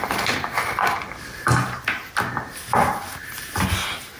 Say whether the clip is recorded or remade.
recorded